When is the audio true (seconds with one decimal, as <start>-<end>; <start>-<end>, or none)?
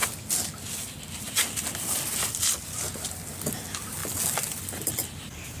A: 0.0-5.6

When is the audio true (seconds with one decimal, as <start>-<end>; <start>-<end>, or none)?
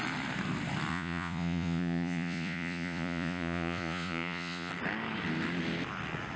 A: 0.0-0.9; 4.7-6.4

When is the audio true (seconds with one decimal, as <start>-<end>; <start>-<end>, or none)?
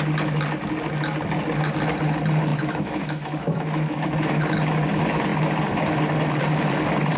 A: 0.0-2.5; 4.4-7.2